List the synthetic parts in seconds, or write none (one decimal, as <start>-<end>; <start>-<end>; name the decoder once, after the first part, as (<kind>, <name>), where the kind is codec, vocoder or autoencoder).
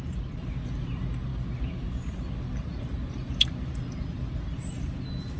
none